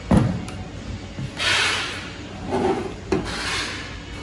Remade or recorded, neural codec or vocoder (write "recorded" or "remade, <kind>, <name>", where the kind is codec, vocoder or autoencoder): recorded